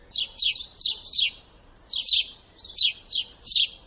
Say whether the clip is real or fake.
real